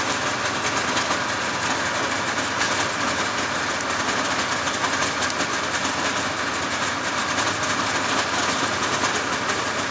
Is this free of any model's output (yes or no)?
yes